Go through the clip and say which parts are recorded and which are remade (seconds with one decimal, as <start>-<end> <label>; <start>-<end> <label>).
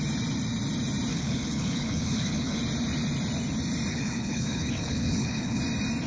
0.0-1.1 recorded; 1.1-2.6 remade; 2.6-3.9 recorded; 3.9-5.6 remade; 5.6-6.1 recorded